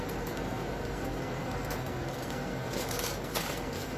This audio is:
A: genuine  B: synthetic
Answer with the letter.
B